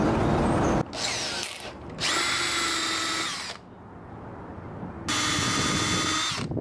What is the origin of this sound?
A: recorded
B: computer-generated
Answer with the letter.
A